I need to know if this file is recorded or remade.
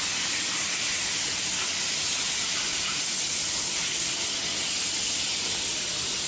recorded